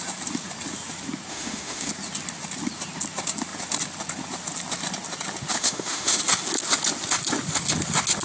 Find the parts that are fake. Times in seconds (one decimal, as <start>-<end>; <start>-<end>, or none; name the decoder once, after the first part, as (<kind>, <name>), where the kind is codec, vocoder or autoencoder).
1.3-1.9 (autoencoder, DAC-VAE); 5.5-6.2